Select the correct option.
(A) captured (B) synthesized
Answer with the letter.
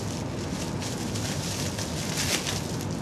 A